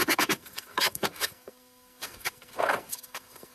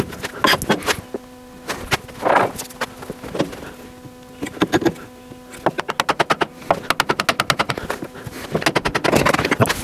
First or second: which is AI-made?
first